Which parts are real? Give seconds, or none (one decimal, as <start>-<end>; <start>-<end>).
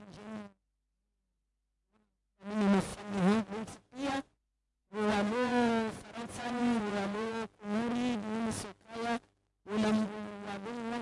0.0-2.9; 7.3-11.0